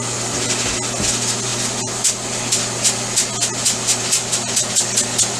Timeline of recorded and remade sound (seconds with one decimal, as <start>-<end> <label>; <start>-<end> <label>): 0.0-5.4 recorded